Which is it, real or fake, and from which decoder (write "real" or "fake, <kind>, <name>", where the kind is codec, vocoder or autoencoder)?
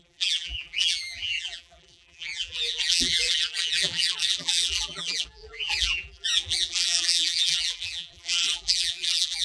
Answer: fake, vocoder, BigVGAN v2